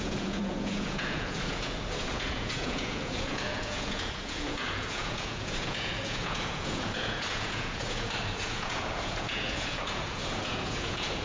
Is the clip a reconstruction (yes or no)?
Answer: yes